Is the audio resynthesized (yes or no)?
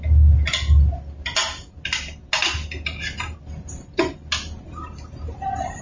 no